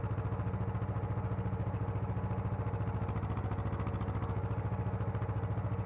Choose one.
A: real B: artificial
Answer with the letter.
A